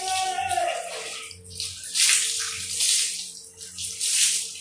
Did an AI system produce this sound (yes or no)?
no